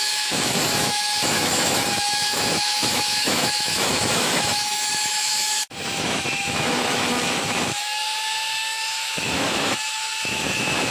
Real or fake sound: fake